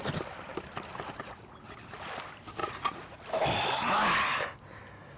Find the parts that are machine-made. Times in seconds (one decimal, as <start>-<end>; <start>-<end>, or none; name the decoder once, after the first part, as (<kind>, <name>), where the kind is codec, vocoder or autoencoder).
2.6-3.2 (vocoder, Vocos)